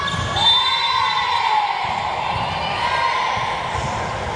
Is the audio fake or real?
real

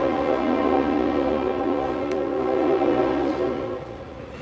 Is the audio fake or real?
fake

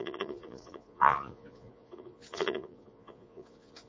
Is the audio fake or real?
fake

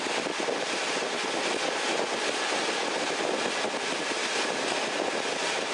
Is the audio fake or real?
real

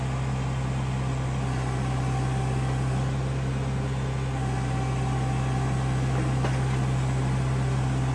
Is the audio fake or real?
real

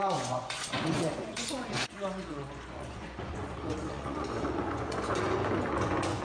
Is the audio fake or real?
fake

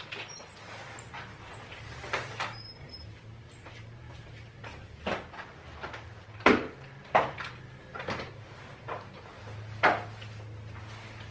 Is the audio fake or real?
real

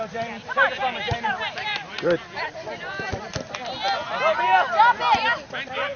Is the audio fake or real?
real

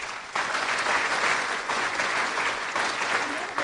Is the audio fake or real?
fake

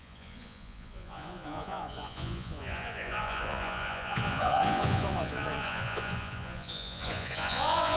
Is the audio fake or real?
fake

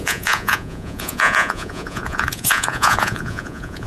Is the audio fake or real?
fake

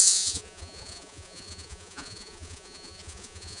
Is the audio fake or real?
fake